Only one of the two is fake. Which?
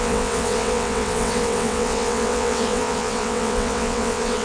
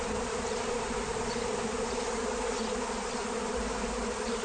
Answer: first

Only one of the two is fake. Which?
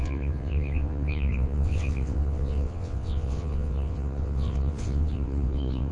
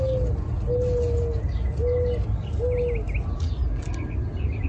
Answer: first